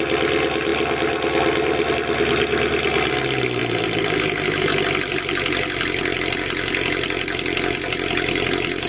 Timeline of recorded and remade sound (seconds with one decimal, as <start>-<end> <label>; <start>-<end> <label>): 0.0-8.9 recorded